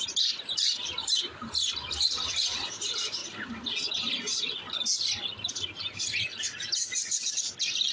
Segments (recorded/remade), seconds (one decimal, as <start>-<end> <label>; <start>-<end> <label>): 0.0-3.2 remade; 3.2-5.5 recorded; 5.5-7.9 remade